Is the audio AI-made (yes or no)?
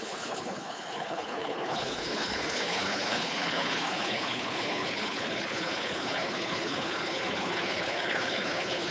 yes